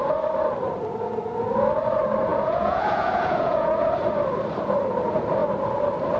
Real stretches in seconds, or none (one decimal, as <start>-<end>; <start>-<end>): 0.0-2.3; 3.9-6.2